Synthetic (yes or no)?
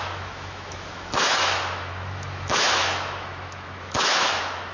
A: yes